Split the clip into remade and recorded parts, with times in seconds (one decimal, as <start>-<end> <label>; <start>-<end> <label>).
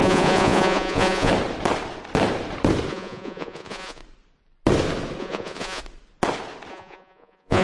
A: 0.0-1.3 remade; 1.3-2.9 recorded; 2.9-4.0 remade; 4.0-5.2 recorded; 5.2-5.8 remade; 5.8-6.7 recorded; 6.7-7.6 remade